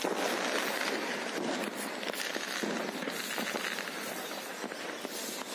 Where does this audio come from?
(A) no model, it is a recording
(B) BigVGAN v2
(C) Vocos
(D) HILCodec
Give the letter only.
A